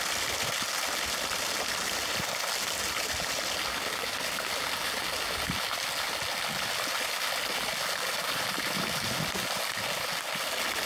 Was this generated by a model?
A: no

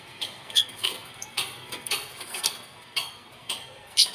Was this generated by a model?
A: yes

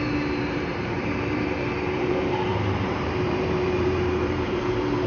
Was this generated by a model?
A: yes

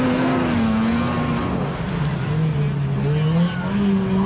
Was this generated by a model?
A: no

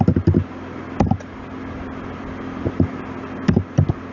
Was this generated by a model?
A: no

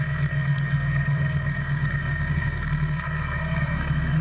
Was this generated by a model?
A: yes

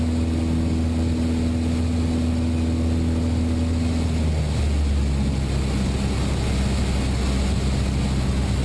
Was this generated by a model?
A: no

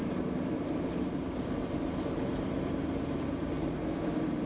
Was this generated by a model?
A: no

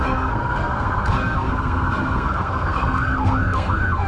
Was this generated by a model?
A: yes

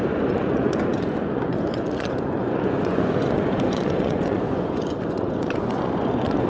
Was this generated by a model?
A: yes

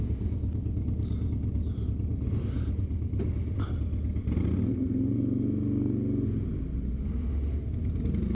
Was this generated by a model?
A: no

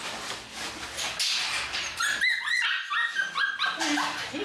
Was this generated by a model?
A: no